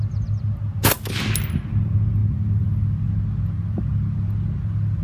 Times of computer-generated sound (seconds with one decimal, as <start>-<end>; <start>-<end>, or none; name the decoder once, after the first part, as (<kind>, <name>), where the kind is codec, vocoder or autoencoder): 2.2-3.1 (vocoder, BigVGAN v2)